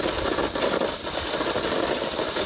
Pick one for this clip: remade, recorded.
recorded